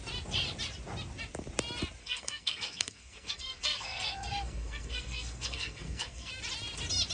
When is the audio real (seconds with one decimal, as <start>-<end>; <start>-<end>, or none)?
0.0-2.0; 6.3-7.1